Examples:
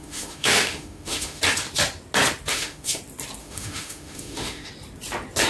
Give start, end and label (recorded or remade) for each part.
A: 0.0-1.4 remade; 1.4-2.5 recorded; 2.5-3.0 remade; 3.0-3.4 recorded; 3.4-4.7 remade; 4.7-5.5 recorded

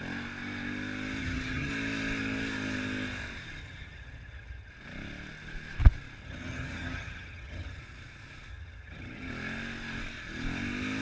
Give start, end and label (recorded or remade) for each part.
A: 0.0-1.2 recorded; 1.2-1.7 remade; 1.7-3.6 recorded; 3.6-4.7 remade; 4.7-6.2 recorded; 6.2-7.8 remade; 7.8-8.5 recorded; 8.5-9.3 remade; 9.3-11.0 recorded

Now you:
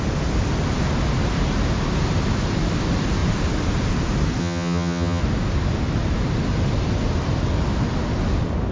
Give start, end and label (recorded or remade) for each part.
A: 0.0-4.4 recorded; 4.4-5.2 remade; 5.2-8.7 recorded